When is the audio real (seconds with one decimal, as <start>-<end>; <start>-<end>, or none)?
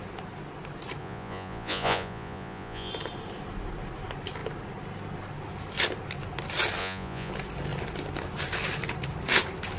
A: 0.0-1.0; 2.9-6.8; 7.3-9.8